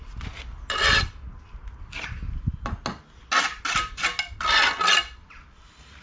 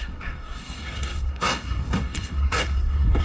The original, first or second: first